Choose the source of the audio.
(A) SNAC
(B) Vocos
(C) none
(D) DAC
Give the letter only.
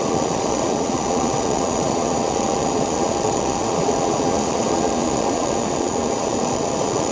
B